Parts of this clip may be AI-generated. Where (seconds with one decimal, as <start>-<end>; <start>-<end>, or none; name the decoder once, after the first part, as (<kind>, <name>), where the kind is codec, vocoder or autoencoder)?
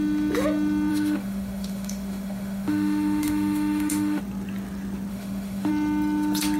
0.9-4.2 (autoencoder, DAC-VAE); 5.1-5.7